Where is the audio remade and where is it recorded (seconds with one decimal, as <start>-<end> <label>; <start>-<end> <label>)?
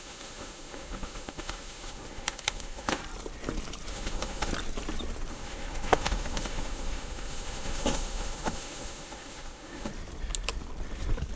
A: 0.0-3.0 remade; 3.0-3.9 recorded; 3.9-4.5 remade; 4.5-5.3 recorded; 5.3-9.9 remade; 9.9-11.4 recorded